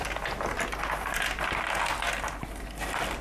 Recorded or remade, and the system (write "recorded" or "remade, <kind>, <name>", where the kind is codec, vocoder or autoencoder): recorded